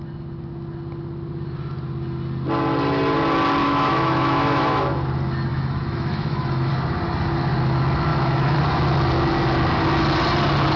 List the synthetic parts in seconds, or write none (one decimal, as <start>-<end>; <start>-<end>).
3.6-4.8; 5.5-6.7; 8.1-8.6